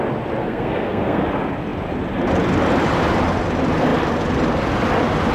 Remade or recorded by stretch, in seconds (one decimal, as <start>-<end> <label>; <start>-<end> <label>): 0.0-0.4 recorded; 0.4-1.2 remade; 1.2-5.3 recorded